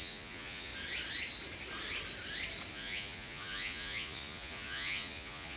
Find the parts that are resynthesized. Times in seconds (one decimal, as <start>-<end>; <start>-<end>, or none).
0.0-0.7; 2.7-5.6